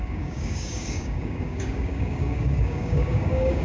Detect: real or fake fake